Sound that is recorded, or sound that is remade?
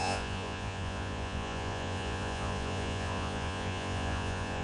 remade